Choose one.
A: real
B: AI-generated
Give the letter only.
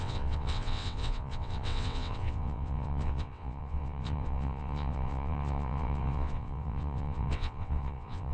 B